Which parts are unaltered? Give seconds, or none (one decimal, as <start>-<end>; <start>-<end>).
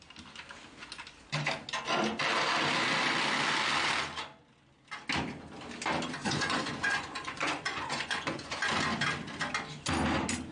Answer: 0.0-6.2; 8.5-10.5